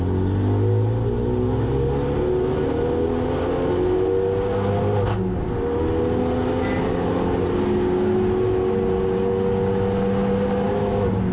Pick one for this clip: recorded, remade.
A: recorded